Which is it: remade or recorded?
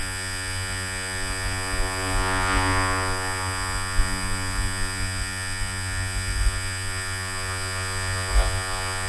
remade